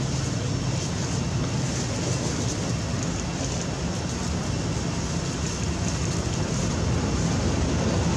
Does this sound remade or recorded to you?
recorded